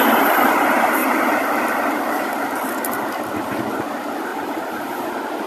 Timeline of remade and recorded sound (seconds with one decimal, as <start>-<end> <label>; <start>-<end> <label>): 0.0-4.3 recorded; 4.3-5.1 remade; 5.1-5.5 recorded